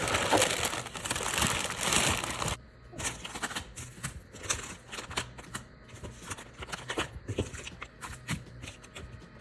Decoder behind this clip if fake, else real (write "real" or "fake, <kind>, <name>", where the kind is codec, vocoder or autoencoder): real